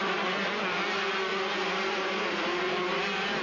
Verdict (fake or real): real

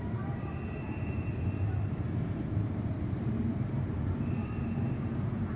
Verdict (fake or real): fake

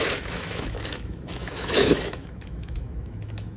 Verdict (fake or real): fake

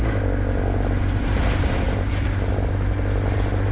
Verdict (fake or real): real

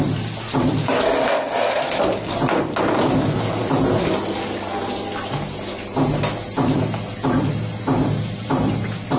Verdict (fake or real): real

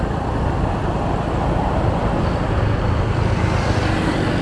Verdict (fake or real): real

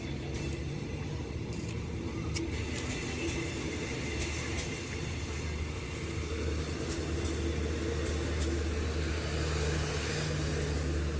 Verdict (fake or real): real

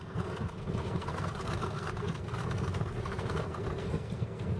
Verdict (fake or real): fake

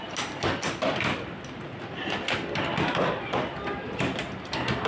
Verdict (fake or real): real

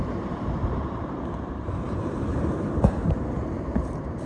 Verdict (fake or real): fake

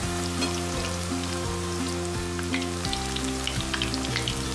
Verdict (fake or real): real